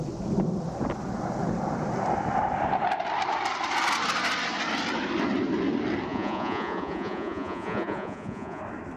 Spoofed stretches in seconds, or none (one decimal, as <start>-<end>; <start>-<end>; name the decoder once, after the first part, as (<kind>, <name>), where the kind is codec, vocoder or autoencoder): 6.1-8.6 (vocoder, Vocos)